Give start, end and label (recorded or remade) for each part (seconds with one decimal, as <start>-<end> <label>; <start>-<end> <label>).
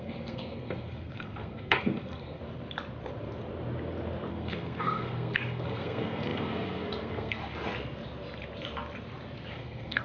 0.0-2.4 remade; 2.4-4.3 recorded; 4.3-7.4 remade; 7.4-9.5 recorded; 9.5-10.0 remade